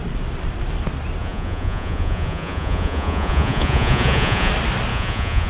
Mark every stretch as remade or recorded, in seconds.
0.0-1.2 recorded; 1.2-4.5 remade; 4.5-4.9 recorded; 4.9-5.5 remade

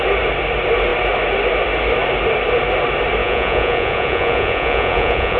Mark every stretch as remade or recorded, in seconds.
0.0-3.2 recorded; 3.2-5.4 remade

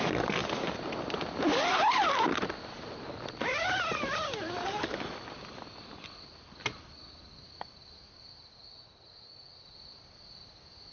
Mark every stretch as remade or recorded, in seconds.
0.0-10.9 recorded